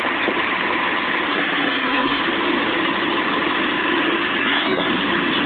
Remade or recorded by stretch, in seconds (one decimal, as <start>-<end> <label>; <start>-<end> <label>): 0.0-1.3 recorded; 1.3-2.2 remade; 2.2-4.4 recorded; 4.4-4.9 remade; 4.9-5.5 recorded

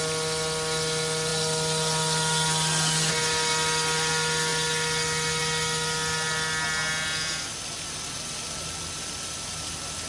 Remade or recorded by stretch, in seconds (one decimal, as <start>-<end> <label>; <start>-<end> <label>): 0.0-10.1 recorded